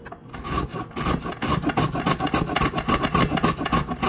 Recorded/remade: recorded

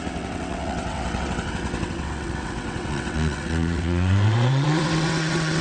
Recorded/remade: remade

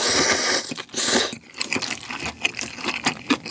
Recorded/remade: recorded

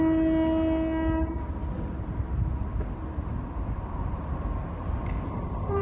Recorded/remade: recorded